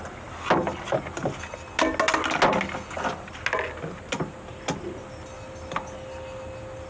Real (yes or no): yes